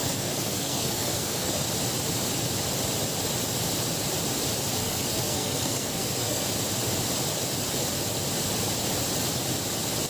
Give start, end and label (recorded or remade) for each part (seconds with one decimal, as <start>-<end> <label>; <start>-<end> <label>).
0.0-1.7 remade; 1.7-4.8 recorded; 4.8-6.5 remade; 6.5-10.1 recorded